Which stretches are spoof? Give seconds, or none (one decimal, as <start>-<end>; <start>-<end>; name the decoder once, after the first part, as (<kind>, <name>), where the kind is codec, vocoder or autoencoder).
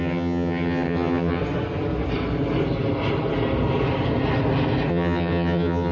0.0-1.4 (vocoder, HiFi-GAN); 4.9-5.9